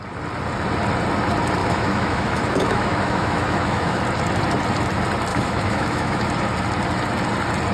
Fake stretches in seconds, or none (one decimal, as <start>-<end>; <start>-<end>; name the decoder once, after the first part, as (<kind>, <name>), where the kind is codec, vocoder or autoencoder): 1.6-4.0 (autoencoder, DAC-VAE); 5.3-6.3